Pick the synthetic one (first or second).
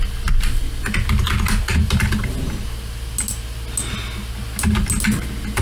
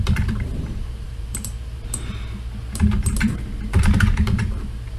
second